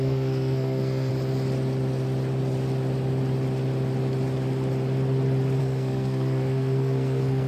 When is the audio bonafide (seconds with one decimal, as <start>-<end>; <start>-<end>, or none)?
1.1-5.6